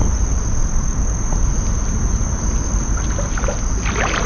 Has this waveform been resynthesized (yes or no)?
no